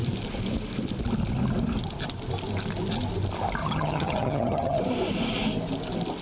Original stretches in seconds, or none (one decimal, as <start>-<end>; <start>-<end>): 0.0-3.6; 4.8-6.2